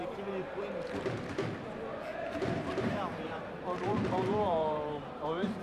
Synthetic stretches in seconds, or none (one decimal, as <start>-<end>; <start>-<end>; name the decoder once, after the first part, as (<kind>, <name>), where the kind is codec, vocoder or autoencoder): 2.1-5.6 (vocoder, BigVGAN v2)